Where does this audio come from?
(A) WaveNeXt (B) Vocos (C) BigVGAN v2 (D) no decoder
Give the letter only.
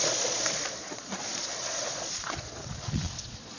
B